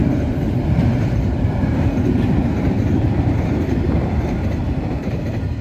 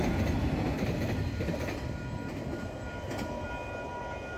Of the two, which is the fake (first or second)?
first